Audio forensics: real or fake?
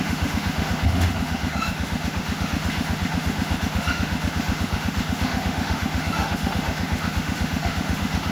fake